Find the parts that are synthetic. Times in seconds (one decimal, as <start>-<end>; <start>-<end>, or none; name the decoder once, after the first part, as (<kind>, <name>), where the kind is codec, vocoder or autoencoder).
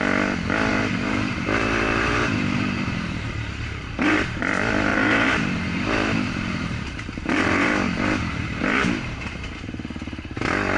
0.7-4.4 (vocoder, BigVGAN v2); 4.9-8.6